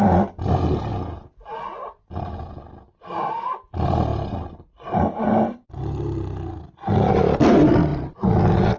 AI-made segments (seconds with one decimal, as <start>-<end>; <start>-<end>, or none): none